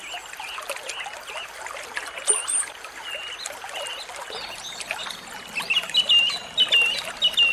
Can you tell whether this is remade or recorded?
recorded